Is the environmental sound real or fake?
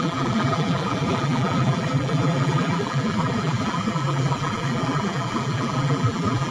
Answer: fake